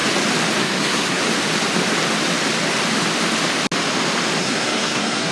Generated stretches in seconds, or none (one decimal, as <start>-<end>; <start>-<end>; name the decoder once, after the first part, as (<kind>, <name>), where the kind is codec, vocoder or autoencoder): 0.6-1.2 (codec, SNAC); 4.4-5.3